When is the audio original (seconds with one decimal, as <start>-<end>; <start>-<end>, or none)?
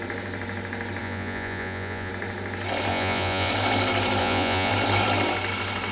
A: 0.0-1.0; 2.1-2.9; 3.5-4.2; 4.7-5.9